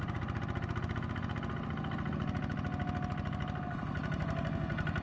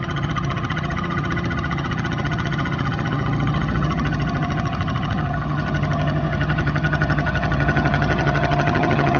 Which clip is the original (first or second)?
first